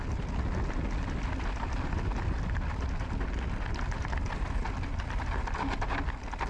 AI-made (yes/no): no